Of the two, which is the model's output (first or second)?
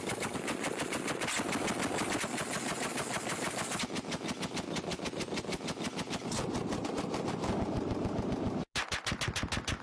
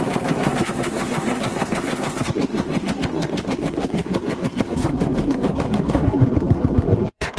second